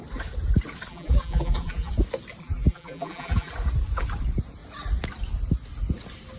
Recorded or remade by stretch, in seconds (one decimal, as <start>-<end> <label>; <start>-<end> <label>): 0.0-0.9 recorded; 0.9-1.9 remade; 1.9-2.4 recorded; 2.4-3.5 remade; 3.5-6.4 recorded